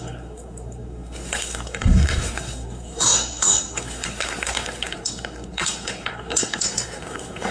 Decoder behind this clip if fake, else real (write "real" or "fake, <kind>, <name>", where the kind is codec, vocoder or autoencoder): fake, codec, SNAC